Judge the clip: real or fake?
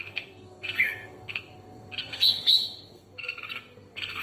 fake